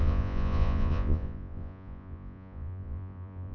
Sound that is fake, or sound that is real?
fake